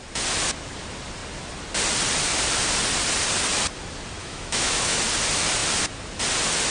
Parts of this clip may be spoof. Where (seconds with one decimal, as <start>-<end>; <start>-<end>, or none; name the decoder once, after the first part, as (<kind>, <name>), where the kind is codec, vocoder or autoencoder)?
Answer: 4.2-5.0 (autoencoder, DAC-VAE)